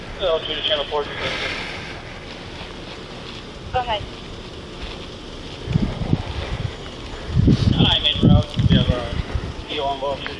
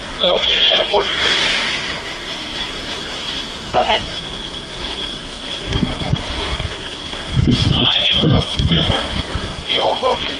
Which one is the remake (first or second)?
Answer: second